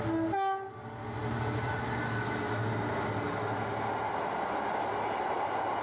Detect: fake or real real